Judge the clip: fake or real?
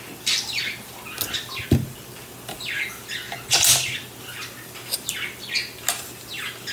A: real